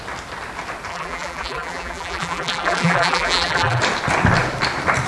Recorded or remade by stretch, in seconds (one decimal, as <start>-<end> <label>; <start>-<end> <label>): 0.0-0.9 recorded; 0.9-3.8 remade; 3.8-5.1 recorded